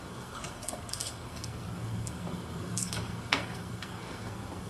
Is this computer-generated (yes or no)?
yes